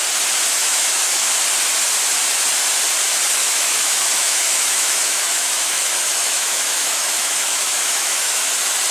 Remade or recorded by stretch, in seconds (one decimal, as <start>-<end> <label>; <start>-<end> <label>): 0.0-0.6 recorded; 0.6-1.3 remade; 1.3-3.4 recorded; 3.4-8.5 remade; 8.5-8.9 recorded